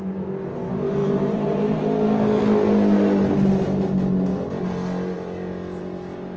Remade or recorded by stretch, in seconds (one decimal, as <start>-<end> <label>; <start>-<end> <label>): 0.0-1.0 recorded; 1.0-1.8 remade; 1.8-6.4 recorded

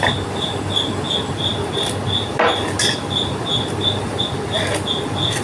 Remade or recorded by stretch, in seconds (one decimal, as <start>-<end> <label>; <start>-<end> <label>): 0.0-5.4 recorded

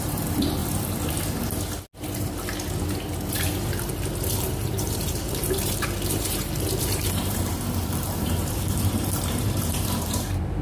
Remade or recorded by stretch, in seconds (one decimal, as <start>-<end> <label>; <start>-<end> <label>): 0.0-0.6 remade; 0.6-4.5 recorded; 4.5-10.6 remade

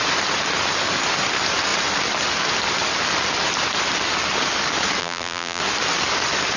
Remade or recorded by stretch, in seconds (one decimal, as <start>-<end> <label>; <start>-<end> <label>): 0.0-5.0 recorded; 5.0-5.6 remade; 5.6-6.6 recorded

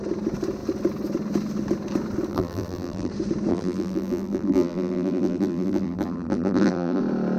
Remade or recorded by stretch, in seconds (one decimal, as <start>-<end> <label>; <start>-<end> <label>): 0.0-2.3 recorded; 2.3-3.1 remade; 3.1-3.5 recorded; 3.5-7.0 remade; 7.0-7.4 recorded